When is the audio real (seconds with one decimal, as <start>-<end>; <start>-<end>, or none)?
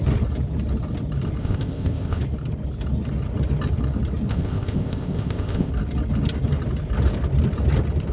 0.0-1.4; 2.2-4.3; 5.7-8.1